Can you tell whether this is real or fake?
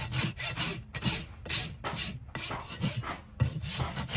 real